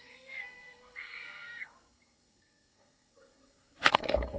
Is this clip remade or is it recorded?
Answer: remade